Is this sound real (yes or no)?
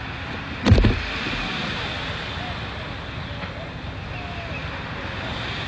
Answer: yes